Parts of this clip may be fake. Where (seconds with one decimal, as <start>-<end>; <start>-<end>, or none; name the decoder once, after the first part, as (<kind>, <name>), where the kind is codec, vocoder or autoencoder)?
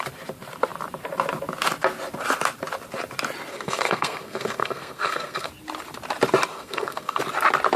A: 3.5-5.5 (codec, SNAC); 6.5-7.2